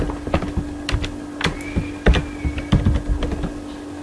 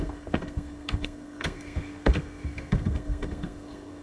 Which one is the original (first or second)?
first